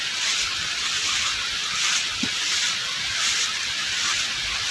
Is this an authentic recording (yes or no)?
yes